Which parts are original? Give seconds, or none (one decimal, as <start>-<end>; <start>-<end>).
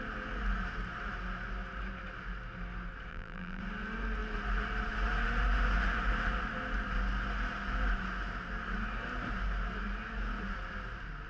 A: 0.0-3.1; 3.6-11.3